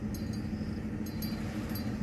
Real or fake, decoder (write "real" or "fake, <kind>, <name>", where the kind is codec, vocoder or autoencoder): real